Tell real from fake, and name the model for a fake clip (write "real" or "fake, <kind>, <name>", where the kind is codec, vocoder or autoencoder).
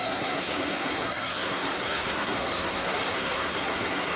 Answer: fake, codec, SNAC